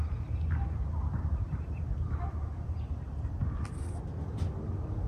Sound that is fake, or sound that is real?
real